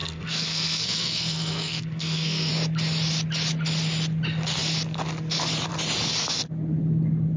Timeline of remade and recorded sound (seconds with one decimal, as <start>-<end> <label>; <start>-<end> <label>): 0.0-2.5 remade; 2.5-7.4 recorded